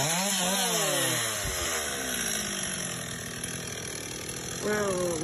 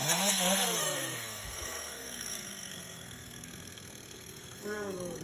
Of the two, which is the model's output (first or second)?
second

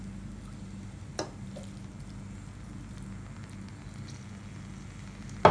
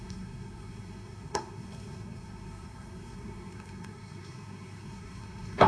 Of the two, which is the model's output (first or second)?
second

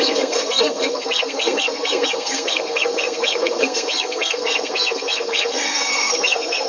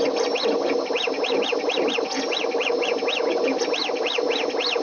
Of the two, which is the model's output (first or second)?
first